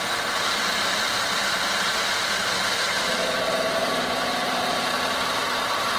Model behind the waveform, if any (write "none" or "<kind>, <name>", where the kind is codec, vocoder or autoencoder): vocoder, BigVGAN v2